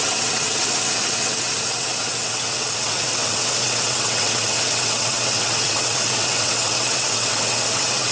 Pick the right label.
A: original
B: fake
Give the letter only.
B